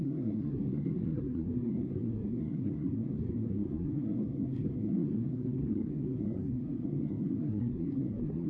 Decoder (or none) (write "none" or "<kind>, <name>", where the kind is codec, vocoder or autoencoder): codec, SNAC